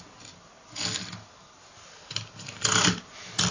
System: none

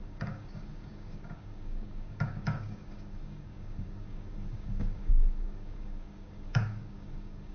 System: codec, DAC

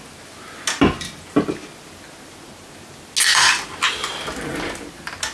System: none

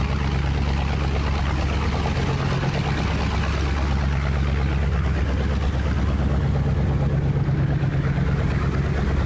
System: none